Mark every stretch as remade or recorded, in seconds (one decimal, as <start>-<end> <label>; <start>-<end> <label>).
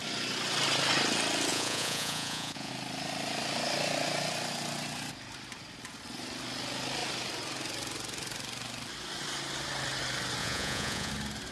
0.0-1.5 recorded; 1.5-2.7 remade; 2.7-10.4 recorded; 10.4-11.1 remade; 11.1-11.5 recorded